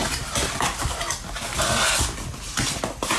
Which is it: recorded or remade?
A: recorded